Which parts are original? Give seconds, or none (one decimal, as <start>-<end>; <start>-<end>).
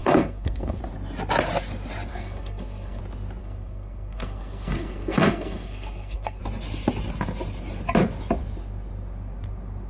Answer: 0.8-2.1; 3.0-3.4; 6.4-9.9